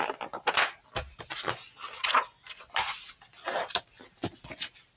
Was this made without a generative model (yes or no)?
yes